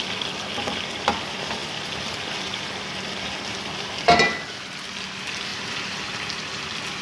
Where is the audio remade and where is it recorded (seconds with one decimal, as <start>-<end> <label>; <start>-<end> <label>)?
0.0-7.0 recorded